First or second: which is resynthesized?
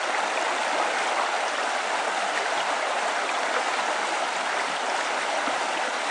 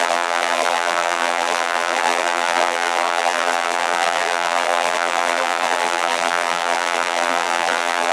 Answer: second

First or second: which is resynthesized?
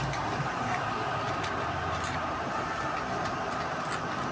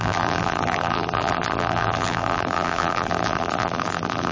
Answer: second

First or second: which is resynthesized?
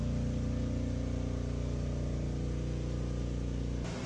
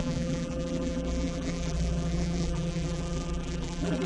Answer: second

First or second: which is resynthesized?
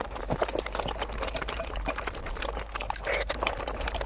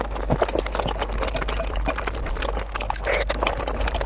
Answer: first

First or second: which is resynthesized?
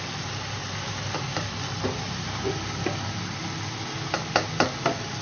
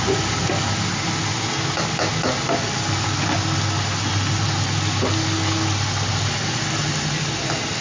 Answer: first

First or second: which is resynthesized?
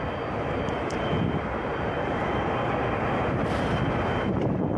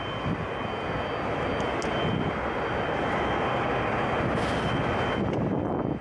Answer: first